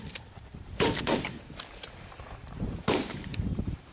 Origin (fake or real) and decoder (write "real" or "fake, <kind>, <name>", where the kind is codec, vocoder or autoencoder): fake, vocoder, BigVGAN v2